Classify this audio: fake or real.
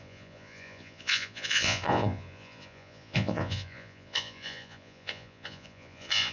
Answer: fake